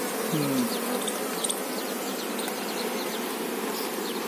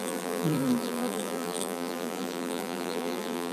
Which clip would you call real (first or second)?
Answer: first